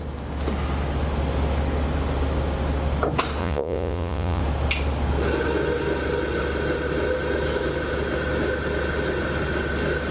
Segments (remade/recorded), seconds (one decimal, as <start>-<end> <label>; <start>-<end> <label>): 0.0-3.4 recorded; 3.4-4.4 remade; 4.4-10.1 recorded